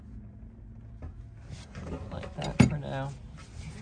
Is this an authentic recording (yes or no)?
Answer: yes